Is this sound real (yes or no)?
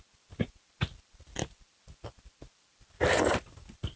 yes